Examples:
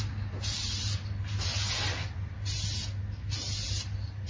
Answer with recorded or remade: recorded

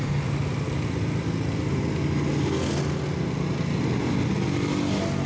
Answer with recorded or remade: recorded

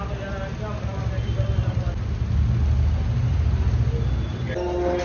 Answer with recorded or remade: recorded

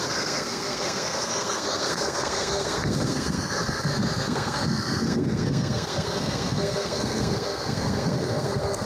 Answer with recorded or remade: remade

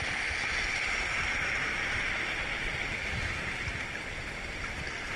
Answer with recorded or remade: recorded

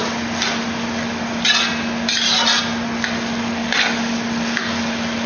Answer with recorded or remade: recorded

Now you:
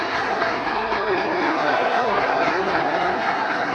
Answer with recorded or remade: remade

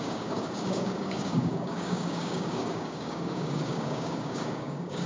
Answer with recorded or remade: remade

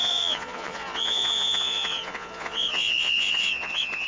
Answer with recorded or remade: remade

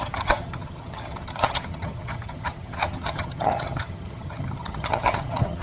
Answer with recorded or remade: remade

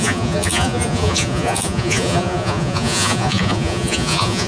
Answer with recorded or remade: remade